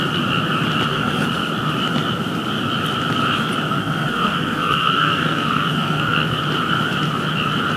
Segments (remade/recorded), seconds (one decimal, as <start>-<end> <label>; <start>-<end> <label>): 0.0-0.9 recorded; 0.9-1.5 remade; 1.5-3.7 recorded; 3.7-6.4 remade; 6.4-7.8 recorded